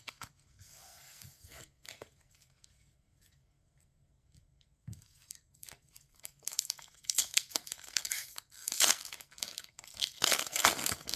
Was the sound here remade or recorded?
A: remade